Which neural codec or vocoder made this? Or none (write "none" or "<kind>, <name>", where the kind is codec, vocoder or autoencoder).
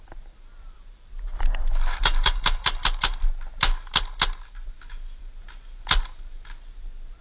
none